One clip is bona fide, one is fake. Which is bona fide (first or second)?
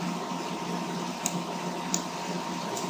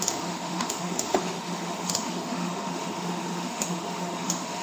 first